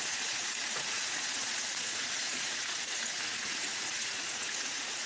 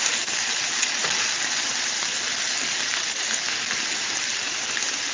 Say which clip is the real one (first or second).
second